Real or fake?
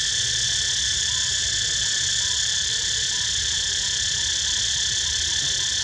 real